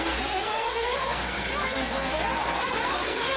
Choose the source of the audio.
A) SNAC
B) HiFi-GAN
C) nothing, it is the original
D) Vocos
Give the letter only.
A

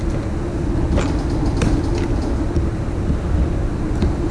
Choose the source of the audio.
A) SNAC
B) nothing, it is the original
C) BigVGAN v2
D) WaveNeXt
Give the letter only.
B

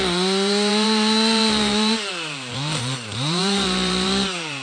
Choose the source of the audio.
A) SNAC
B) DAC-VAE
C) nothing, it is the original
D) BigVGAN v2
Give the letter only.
D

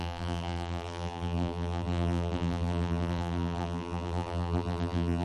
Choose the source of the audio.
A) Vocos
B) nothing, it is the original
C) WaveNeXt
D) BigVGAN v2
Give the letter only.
D